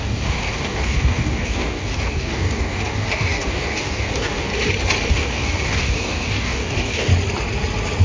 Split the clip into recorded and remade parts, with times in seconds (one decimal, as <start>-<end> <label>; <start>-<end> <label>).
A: 0.0-4.5 remade; 4.5-5.1 recorded; 5.1-7.1 remade; 7.1-8.0 recorded